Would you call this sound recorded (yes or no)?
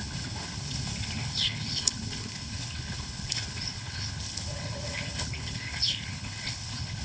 no